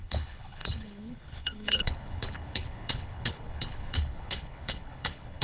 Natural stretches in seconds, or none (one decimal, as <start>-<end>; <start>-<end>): none